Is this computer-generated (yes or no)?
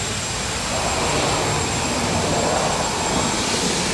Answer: no